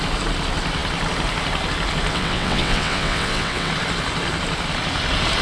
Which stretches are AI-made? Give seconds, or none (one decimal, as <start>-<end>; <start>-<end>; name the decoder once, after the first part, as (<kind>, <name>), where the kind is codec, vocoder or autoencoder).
2.1-3.7 (vocoder, WaveNeXt)